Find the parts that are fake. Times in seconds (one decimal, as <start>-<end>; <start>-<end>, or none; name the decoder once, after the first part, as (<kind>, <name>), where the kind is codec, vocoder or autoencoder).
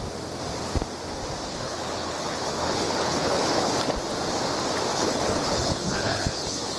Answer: 1.5-3.7 (codec, HILCodec); 4.9-6.8